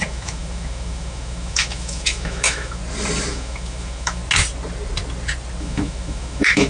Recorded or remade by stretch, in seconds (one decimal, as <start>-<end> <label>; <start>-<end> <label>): 0.0-2.8 remade; 2.8-3.3 recorded; 3.3-4.2 remade; 4.2-5.6 recorded; 5.6-6.7 remade